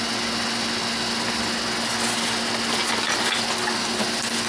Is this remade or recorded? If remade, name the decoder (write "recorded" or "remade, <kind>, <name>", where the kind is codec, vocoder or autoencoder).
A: recorded